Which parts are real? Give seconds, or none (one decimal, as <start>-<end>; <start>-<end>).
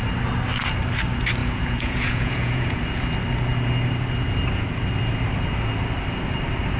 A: 0.0-1.4; 2.8-6.8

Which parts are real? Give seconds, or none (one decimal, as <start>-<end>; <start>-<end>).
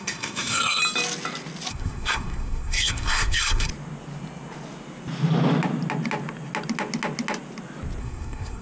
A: 0.8-1.7; 3.7-8.0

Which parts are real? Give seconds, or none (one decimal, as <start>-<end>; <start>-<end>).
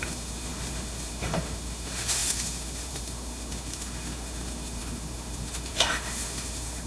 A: none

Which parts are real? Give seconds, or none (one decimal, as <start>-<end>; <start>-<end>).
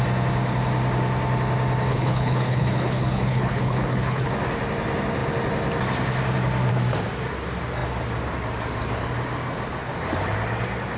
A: 0.0-1.9; 4.3-11.0